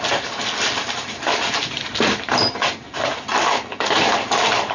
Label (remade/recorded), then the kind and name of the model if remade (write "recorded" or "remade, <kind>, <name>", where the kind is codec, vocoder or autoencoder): remade, vocoder, BigVGAN v2